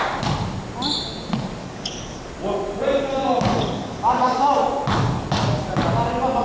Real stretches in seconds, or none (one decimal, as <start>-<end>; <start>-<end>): 0.0-1.6; 2.3-3.1; 4.6-6.4